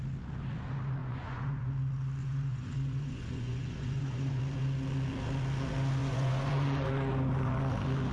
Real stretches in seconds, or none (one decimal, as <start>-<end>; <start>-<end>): 0.0-1.0; 1.7-2.2; 4.4-6.0; 6.9-8.1